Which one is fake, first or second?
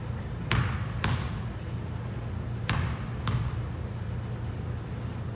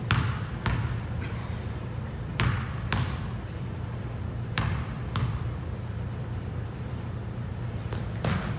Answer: second